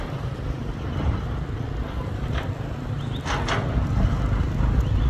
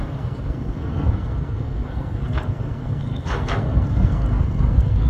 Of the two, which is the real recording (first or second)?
first